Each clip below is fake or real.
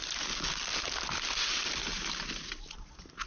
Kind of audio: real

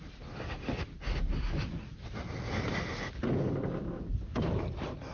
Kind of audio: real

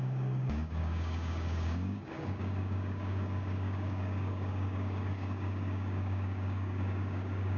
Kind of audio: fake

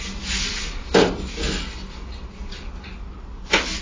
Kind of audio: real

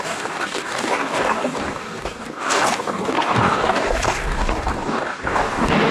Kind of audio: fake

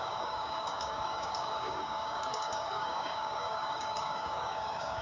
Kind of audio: fake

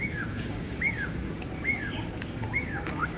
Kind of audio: fake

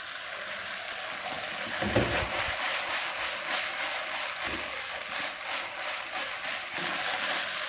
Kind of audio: real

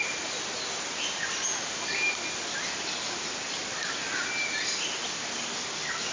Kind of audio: real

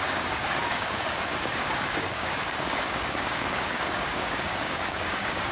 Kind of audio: fake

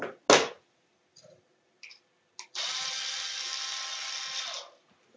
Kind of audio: real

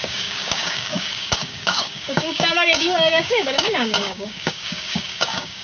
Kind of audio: fake